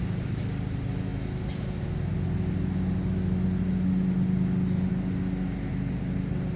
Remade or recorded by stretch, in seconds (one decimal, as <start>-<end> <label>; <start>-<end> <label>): 0.0-6.6 recorded